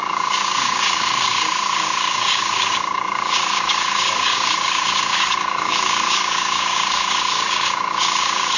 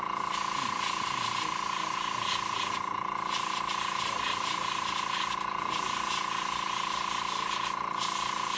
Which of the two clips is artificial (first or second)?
first